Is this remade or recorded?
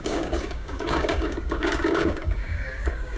remade